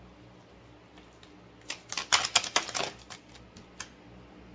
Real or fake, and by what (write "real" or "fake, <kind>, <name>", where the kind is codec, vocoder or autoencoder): real